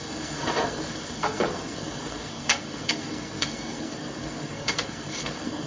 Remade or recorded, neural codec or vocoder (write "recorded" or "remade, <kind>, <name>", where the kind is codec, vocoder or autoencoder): remade, codec, SNAC